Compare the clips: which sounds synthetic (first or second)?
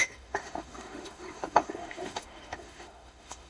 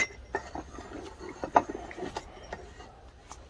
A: first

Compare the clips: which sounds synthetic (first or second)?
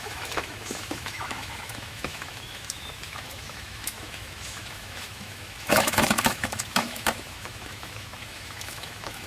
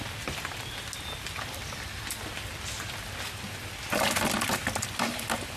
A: first